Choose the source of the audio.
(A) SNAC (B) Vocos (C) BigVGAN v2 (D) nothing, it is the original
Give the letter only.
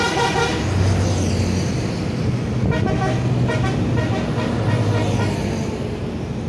D